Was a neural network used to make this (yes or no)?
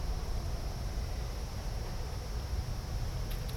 no